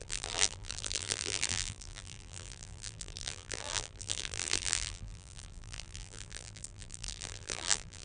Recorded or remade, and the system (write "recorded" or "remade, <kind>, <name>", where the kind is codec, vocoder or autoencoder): remade, vocoder, BigVGAN v2